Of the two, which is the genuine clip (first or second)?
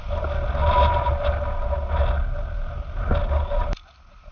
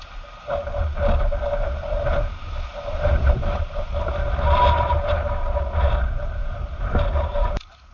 first